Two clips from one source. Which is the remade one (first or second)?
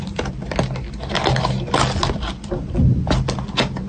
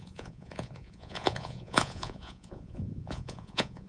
second